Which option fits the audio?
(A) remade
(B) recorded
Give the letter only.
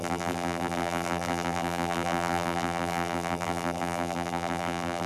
A